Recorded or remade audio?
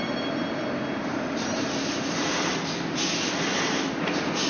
recorded